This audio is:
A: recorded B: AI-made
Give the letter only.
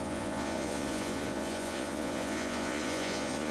B